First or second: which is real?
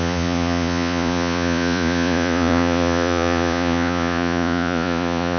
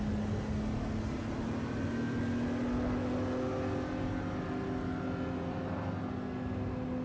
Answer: second